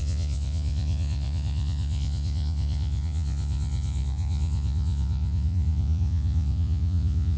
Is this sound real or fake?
fake